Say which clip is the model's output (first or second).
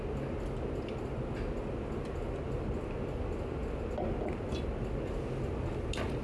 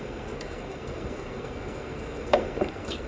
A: second